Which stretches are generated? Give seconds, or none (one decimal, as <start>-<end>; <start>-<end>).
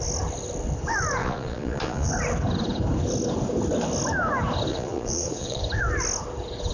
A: 1.2-2.1; 4.7-5.6